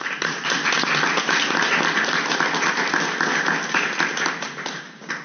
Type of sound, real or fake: real